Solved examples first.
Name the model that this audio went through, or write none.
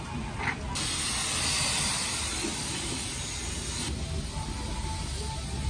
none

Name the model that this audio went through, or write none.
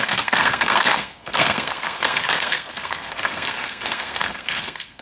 codec, SNAC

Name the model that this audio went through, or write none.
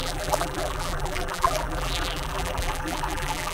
vocoder, BigVGAN v2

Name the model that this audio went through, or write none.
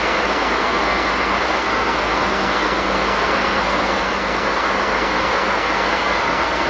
codec, SNAC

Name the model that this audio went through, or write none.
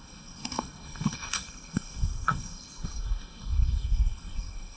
codec, SNAC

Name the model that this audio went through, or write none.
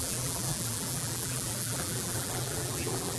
vocoder, BigVGAN v2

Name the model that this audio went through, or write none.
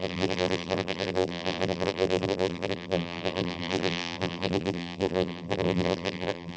vocoder, BigVGAN v2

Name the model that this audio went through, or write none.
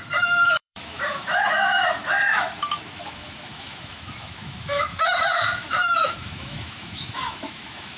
autoencoder, DAC-VAE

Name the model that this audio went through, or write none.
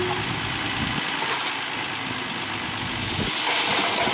none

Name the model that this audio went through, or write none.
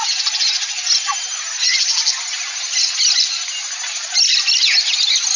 none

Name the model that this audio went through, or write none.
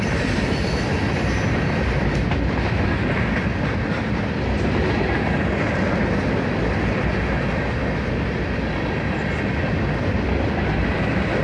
none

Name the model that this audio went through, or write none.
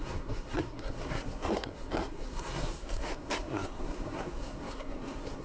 codec, SNAC